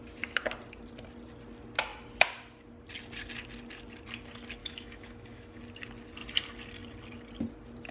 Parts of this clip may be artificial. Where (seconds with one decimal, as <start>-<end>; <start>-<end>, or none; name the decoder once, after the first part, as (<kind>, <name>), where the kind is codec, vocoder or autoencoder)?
4.6-5.6 (autoencoder, DAC-VAE)